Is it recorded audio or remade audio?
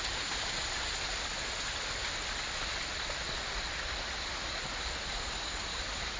recorded